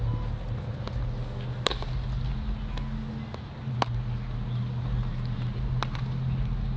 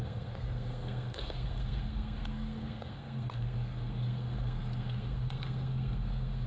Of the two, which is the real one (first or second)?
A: first